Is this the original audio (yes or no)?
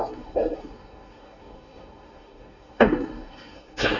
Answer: no